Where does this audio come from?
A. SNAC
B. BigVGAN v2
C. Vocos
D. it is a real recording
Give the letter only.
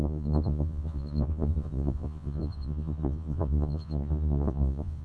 C